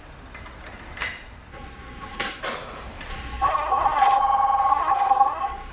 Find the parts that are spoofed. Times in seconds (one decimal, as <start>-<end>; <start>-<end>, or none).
1.5-2.4; 3.1-4.2; 4.7-5.7